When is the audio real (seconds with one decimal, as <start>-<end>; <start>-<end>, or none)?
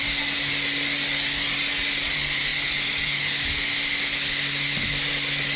0.0-5.6